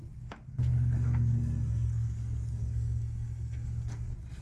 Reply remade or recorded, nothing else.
remade